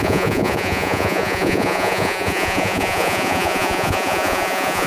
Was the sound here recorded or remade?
remade